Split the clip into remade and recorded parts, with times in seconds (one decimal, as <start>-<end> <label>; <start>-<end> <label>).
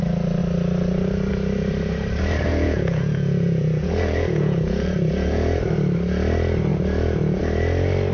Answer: 0.0-2.5 recorded; 2.5-5.6 remade; 5.6-6.7 recorded; 6.7-7.4 remade; 7.4-8.1 recorded